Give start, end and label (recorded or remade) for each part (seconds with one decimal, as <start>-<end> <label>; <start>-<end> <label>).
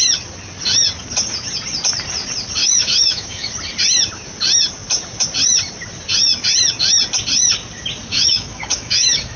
0.0-2.6 recorded; 2.6-3.5 remade; 3.5-8.1 recorded; 8.1-9.4 remade